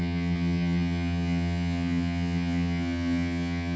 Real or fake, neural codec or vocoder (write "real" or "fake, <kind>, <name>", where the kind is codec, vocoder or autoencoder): fake, vocoder, HiFi-GAN